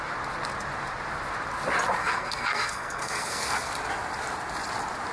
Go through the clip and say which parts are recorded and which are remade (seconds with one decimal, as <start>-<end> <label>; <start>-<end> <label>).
0.0-2.0 recorded; 2.0-3.7 remade; 3.7-5.1 recorded

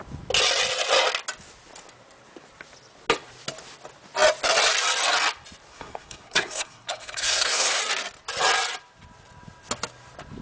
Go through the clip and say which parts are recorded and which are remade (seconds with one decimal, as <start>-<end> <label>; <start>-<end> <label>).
0.0-5.7 recorded; 5.7-7.8 remade; 7.8-10.4 recorded

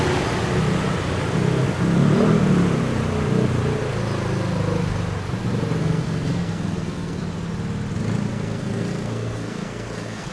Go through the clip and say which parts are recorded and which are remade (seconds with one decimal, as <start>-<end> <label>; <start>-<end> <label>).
0.0-5.8 recorded; 5.8-7.2 remade; 7.2-8.3 recorded; 8.3-10.3 remade

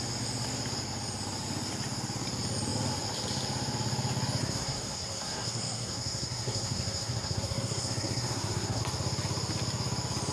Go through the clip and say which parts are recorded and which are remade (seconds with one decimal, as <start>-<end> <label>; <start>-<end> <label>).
0.0-4.4 recorded; 4.4-8.8 remade; 8.8-10.3 recorded

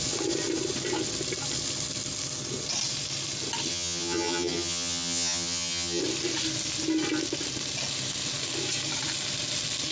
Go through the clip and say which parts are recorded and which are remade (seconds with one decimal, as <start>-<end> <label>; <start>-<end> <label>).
0.0-3.7 recorded; 3.7-6.0 remade; 6.0-9.9 recorded

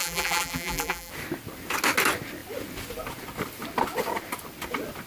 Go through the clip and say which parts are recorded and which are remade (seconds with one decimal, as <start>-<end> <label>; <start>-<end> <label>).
0.0-1.1 remade; 1.1-5.1 recorded

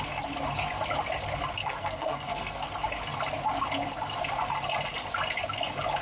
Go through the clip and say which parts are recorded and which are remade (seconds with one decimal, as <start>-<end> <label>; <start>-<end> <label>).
0.0-1.6 recorded; 1.6-2.7 remade; 2.7-6.0 recorded

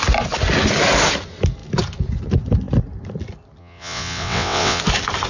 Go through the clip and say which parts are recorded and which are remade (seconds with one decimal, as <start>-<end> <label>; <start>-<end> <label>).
0.0-3.6 recorded; 3.6-4.8 remade; 4.8-5.3 recorded